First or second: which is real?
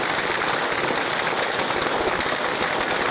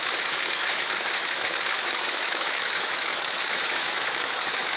first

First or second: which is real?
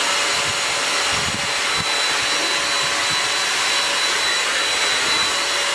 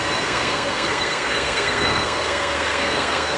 first